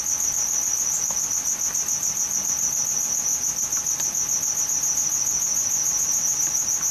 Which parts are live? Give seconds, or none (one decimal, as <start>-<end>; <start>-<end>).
0.0-6.9

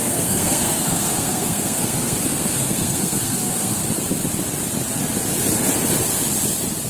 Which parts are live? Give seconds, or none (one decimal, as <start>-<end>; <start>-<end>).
3.8-6.9